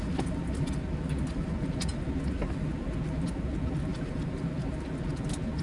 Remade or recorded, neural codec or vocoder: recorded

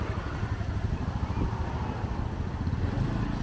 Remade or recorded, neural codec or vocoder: recorded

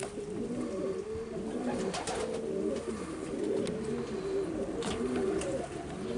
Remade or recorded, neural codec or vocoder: recorded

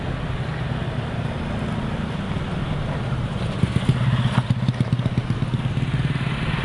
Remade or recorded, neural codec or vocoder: recorded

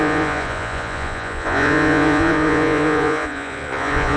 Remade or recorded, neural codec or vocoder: remade, vocoder, Vocos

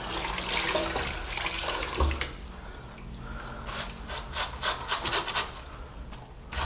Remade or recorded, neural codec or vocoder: recorded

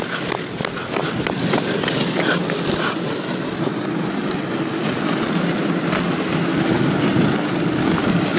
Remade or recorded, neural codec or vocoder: recorded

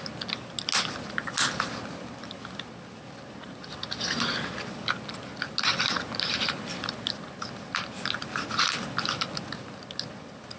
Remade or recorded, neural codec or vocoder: recorded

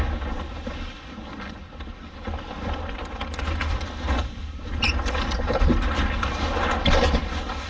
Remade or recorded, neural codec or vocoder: recorded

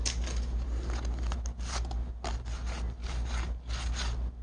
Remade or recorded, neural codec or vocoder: recorded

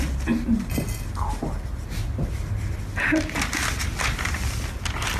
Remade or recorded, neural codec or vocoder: recorded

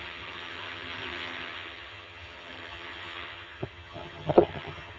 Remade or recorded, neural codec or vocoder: remade, vocoder, HiFi-GAN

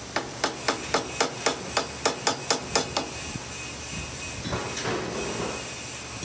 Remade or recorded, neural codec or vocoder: recorded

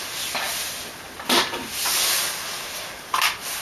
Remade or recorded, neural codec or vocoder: recorded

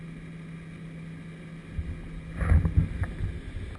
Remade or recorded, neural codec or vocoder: recorded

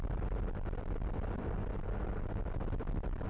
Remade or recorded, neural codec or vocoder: recorded